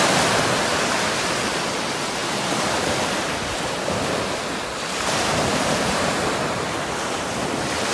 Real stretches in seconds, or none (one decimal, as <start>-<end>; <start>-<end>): 0.0-7.9